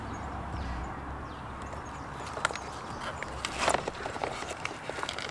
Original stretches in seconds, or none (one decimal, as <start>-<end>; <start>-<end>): 0.8-4.0